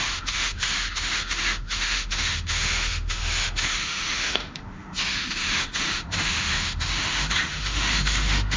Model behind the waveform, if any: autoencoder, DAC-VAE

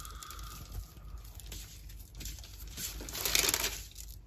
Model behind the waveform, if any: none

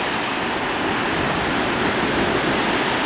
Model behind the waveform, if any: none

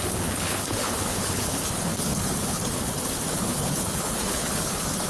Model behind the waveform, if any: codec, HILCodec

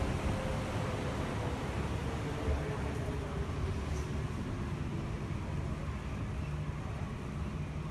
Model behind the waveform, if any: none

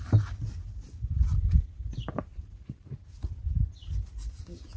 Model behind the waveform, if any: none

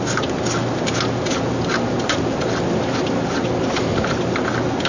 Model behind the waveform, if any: none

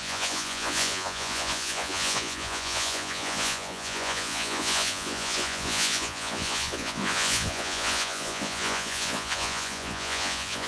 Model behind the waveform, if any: vocoder, Vocos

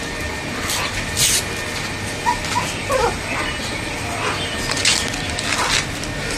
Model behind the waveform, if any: none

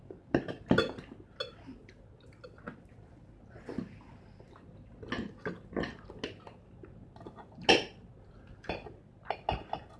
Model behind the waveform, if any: none